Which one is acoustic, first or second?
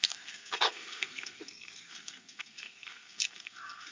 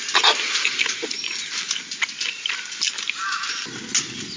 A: second